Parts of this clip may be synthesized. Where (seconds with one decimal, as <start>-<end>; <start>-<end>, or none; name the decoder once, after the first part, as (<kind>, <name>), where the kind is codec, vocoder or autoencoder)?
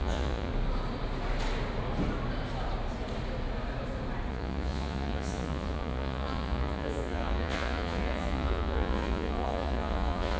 0.0-0.5 (vocoder, Vocos); 4.3-10.4